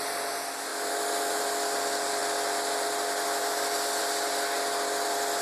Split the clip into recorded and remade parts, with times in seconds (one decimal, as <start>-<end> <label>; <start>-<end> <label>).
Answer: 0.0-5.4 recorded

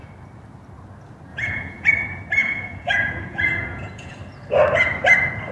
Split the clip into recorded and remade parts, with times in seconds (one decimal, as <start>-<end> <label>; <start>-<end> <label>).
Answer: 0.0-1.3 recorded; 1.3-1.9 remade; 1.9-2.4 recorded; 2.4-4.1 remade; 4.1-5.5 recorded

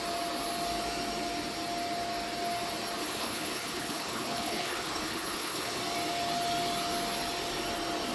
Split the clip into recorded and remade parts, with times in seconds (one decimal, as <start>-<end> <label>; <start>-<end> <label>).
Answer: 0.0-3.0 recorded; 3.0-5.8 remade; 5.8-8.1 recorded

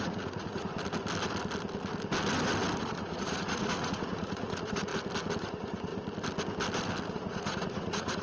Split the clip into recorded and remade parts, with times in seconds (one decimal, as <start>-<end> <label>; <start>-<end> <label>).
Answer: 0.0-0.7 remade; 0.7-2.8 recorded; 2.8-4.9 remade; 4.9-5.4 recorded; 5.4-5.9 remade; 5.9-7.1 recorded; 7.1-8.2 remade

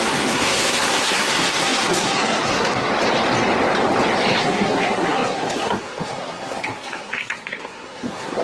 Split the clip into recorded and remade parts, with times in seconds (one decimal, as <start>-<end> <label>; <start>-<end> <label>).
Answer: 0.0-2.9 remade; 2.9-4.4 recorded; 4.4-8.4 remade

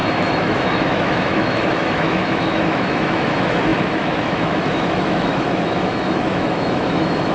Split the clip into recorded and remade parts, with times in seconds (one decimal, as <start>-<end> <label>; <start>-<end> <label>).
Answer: 0.0-7.3 remade